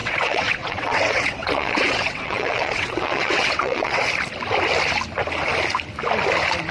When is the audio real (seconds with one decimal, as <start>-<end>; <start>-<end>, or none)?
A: 4.0-6.7